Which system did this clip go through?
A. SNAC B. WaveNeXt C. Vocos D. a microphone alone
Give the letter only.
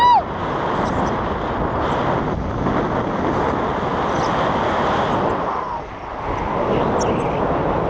D